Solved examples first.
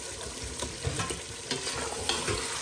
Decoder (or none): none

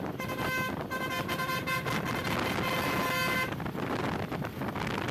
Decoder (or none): none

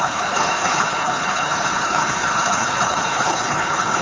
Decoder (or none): codec, HILCodec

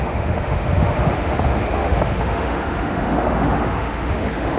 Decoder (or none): autoencoder, DAC-VAE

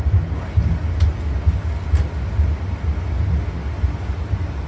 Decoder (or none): none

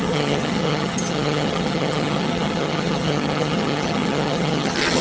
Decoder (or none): vocoder, HiFi-GAN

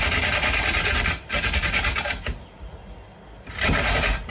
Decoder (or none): none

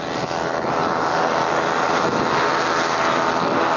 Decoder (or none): none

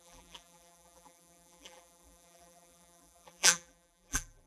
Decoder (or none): vocoder, BigVGAN v2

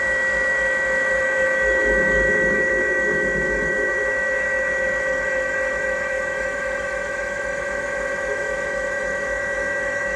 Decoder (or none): autoencoder, DAC-VAE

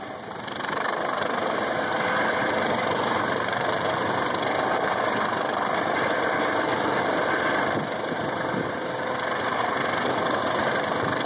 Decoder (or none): vocoder, BigVGAN v2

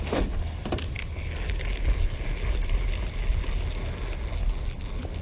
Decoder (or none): none